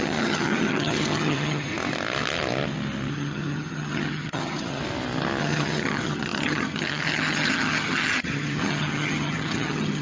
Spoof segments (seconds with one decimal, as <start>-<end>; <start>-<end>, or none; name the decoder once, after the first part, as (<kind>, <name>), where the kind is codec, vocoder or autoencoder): 0.0-1.7 (vocoder, HiFi-GAN); 3.1-4.8; 5.4-10.0